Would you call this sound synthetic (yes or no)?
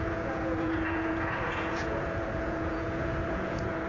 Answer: yes